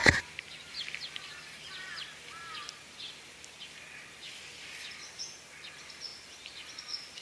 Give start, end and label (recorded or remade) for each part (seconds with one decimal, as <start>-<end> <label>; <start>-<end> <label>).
0.0-7.2 recorded